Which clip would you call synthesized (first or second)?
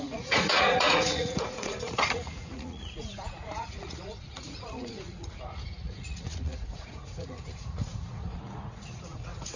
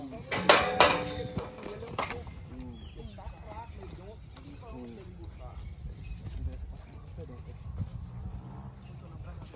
first